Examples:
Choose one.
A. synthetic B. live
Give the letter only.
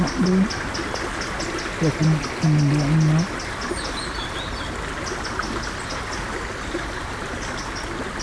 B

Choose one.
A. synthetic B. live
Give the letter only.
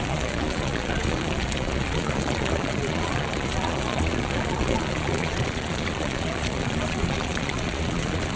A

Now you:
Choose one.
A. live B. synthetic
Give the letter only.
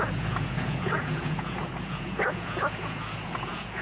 B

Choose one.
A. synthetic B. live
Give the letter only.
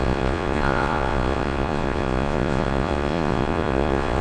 A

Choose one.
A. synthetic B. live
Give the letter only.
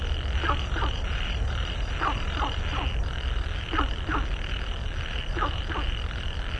B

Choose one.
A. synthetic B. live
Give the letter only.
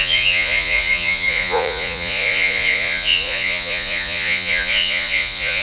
A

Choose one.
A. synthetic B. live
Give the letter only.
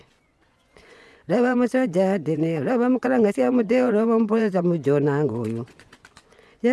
A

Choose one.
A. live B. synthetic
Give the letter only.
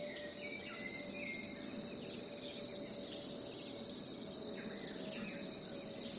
A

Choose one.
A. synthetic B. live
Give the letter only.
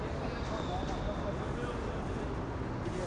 B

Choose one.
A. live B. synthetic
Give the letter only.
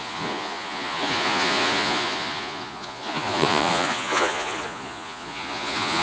B